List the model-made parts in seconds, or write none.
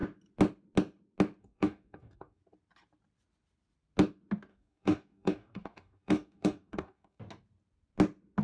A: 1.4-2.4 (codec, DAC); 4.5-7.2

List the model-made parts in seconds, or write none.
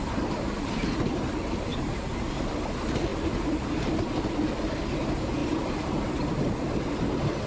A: none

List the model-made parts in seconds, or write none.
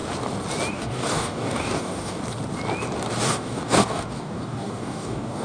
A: 0.7-2.2 (codec, DAC); 3.2-5.4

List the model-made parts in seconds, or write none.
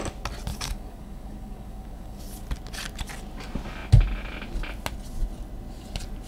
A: 0.5-2.2 (codec, DAC)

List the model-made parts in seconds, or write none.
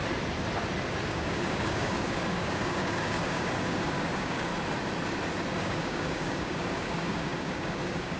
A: 1.1-4.5 (codec, DAC); 5.6-8.2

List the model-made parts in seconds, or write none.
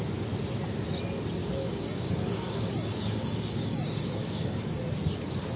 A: 1.4-4.8 (codec, DAC)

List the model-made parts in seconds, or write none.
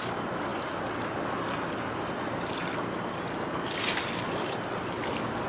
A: none